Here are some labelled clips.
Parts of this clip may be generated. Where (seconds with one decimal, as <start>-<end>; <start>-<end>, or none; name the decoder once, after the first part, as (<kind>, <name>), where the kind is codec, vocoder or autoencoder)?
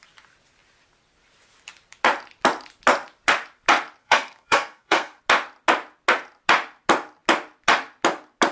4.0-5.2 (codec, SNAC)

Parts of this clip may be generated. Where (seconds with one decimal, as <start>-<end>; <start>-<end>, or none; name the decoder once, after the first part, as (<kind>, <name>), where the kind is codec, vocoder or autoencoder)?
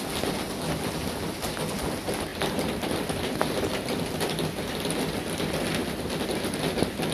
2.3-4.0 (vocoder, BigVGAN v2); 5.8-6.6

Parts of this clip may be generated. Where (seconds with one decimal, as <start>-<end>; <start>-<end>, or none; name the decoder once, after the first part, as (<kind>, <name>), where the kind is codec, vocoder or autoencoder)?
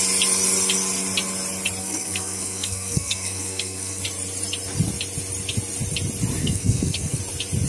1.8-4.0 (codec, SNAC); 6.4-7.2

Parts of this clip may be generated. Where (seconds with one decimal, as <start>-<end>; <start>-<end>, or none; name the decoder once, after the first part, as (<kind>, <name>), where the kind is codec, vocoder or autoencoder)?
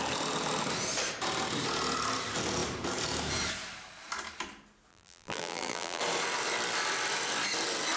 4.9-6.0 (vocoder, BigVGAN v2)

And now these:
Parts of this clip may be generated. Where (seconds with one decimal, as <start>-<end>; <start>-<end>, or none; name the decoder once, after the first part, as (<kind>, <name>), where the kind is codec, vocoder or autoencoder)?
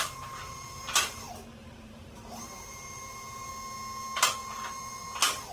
0.0-0.8 (vocoder, BigVGAN v2); 1.5-3.5; 4.4-5.0